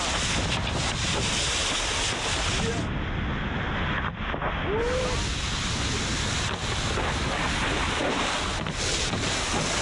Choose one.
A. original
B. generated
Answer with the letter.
A